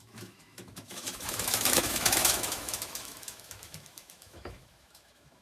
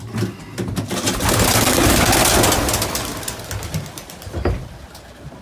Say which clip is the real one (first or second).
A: second